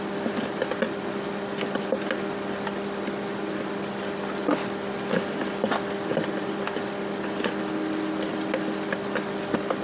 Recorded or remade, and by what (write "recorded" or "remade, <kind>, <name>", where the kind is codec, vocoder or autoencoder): recorded